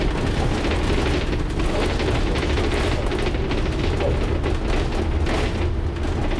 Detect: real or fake real